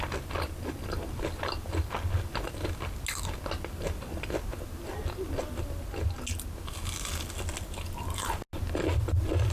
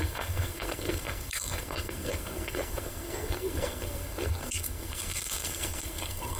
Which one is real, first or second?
first